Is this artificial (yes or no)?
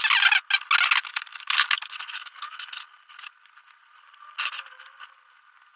no